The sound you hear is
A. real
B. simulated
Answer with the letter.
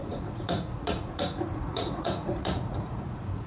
B